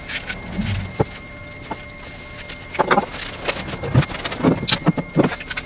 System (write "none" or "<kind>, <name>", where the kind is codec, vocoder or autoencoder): none